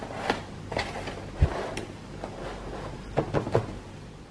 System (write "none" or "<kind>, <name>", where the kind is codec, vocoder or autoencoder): none